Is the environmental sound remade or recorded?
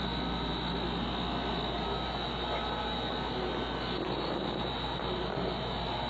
recorded